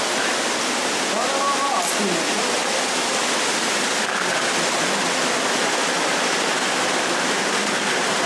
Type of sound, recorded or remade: recorded